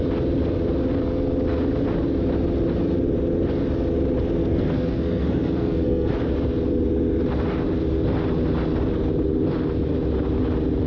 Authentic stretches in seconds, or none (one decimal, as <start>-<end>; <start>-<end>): 0.0-4.4; 6.1-10.9